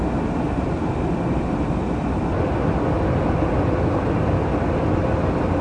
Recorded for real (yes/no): yes